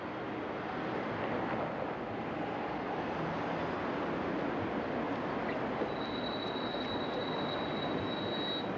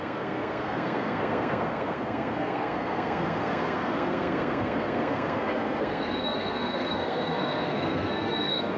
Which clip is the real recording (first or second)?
first